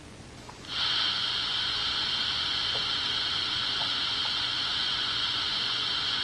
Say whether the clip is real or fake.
fake